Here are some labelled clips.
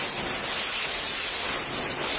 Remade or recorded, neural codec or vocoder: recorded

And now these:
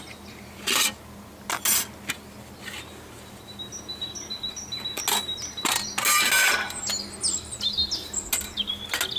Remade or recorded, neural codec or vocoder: recorded